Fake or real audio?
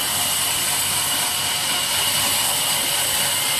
real